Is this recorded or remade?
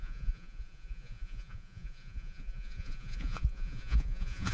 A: remade